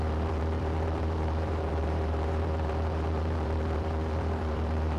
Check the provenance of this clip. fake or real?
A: fake